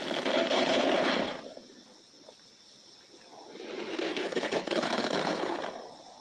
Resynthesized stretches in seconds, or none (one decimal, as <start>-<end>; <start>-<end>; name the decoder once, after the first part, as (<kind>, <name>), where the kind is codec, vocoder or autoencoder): 0.5-1.1 (codec, HILCodec); 4.1-5.6